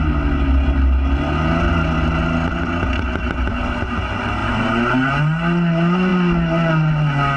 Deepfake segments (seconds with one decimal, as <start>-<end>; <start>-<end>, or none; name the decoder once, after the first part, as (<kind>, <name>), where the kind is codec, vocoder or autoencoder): 4.4-5.2 (vocoder, BigVGAN v2)